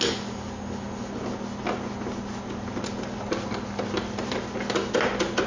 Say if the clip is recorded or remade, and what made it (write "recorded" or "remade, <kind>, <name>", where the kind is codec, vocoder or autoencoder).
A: recorded